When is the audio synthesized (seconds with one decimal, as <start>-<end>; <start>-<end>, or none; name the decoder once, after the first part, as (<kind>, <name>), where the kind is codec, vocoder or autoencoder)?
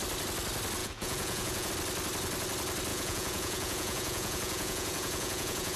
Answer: 0.8-1.7 (vocoder, Vocos); 2.9-5.8